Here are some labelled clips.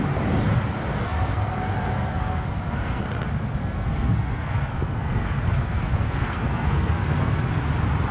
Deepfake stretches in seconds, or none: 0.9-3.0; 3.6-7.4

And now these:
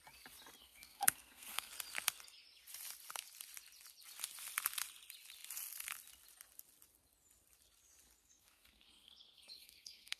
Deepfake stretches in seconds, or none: 0.6-1.7; 8.2-10.2

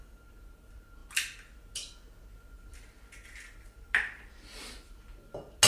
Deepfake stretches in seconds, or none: none

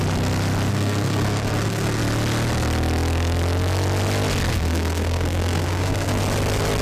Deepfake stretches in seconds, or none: 0.7-2.0; 4.5-6.1

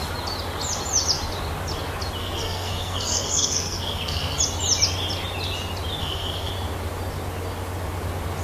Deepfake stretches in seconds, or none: 2.2-4.4; 6.0-6.5

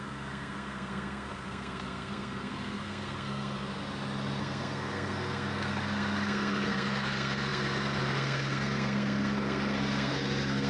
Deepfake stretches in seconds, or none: 0.0-3.8; 4.4-10.7

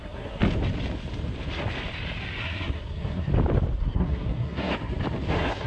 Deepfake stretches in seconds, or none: 0.0-0.4; 2.4-3.3; 3.8-4.7; 5.3-5.7

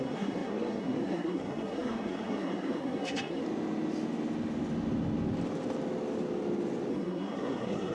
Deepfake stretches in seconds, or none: 0.0-3.4; 6.9-7.9